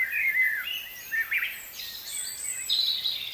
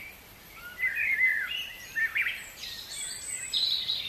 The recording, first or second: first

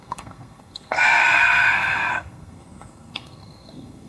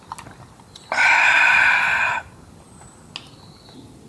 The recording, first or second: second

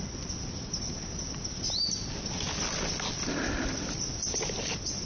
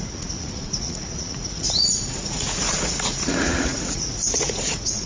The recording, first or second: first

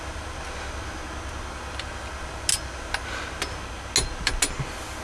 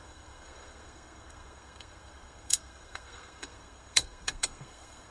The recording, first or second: first